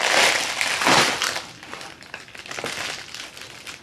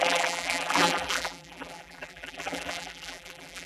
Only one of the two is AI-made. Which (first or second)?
second